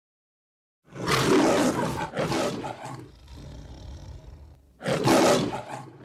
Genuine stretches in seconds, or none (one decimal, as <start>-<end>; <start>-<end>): 0.0-6.0